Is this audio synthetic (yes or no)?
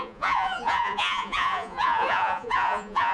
yes